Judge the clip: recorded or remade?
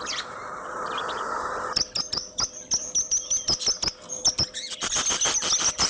recorded